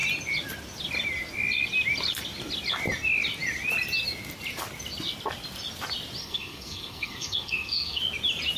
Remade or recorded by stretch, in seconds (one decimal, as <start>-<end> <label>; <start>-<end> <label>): 0.0-6.2 recorded; 6.2-8.0 remade; 8.0-8.6 recorded